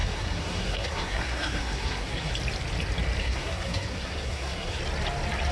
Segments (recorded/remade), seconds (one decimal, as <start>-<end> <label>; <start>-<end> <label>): 0.0-2.3 remade; 2.3-3.2 recorded; 3.2-4.8 remade; 4.8-5.5 recorded